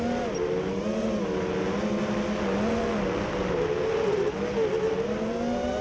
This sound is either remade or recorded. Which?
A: recorded